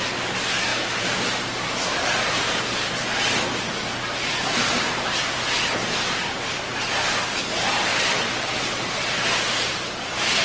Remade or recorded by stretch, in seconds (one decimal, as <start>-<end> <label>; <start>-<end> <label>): 0.0-7.9 recorded; 7.9-8.6 remade; 8.6-10.4 recorded